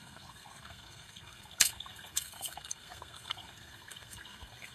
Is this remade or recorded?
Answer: remade